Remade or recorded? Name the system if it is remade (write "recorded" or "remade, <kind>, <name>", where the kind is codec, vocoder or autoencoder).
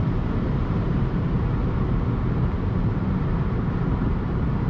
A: remade, vocoder, BigVGAN v2